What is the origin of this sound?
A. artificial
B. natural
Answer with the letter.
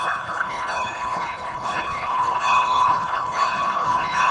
A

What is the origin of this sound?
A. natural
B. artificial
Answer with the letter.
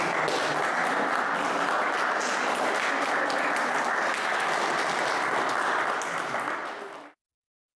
A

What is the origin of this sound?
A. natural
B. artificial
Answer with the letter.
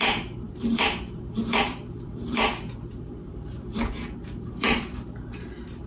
B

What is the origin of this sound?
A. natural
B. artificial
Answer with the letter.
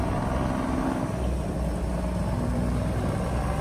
A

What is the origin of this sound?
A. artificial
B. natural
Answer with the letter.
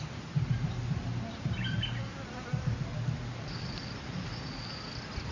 B